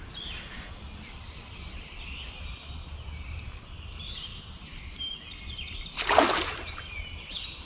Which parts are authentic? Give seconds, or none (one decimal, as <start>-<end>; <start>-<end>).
0.8-7.7